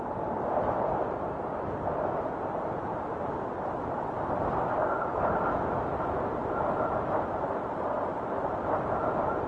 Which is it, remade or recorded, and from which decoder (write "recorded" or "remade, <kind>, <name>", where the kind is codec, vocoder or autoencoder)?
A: recorded